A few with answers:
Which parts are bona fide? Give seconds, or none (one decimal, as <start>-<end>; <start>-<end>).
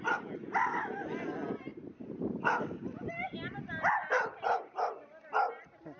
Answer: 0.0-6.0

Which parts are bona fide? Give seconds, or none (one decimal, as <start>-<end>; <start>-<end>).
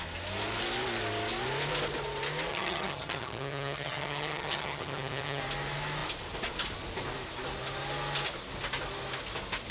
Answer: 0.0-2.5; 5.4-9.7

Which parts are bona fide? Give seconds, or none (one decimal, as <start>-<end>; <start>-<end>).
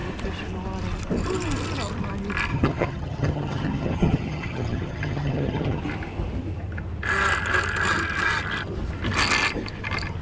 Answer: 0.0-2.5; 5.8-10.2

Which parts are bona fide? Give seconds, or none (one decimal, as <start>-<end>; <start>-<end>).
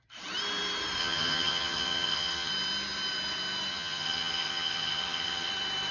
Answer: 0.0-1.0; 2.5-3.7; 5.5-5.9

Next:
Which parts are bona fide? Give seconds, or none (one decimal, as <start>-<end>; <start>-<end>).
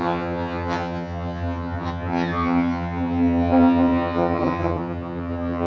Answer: none